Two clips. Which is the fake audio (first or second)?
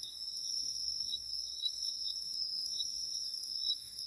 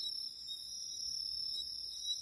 first